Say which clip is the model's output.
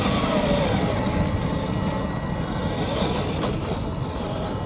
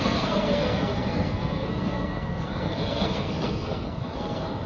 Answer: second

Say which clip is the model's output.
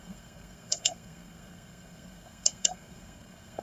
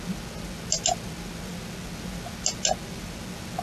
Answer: first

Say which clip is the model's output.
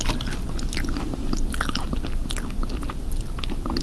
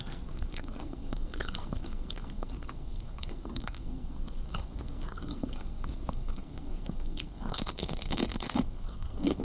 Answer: second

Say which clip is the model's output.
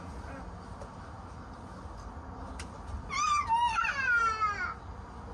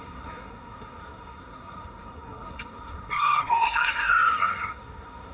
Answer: second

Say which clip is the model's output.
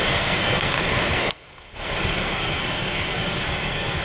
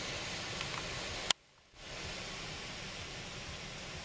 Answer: first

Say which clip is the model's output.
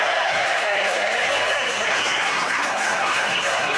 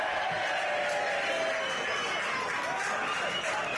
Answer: first